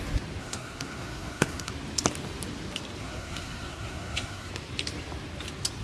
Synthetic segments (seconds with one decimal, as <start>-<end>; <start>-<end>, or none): 0.4-1.7; 3.0-4.5